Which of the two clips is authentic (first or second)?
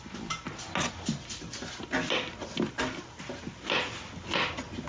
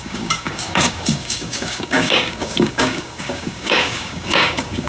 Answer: first